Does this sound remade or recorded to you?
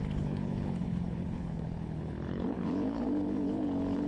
remade